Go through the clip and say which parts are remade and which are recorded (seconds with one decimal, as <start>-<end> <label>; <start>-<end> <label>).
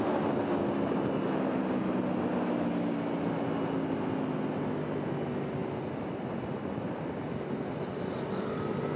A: 0.0-9.0 recorded